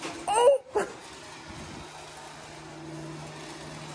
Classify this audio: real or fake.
real